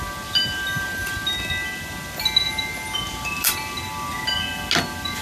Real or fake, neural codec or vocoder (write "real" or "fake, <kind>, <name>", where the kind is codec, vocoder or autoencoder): real